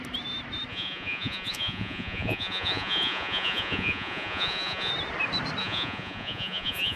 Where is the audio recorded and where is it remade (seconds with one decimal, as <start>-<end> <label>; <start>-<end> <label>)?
0.0-0.7 recorded; 0.7-4.9 remade; 4.9-5.6 recorded; 5.6-7.0 remade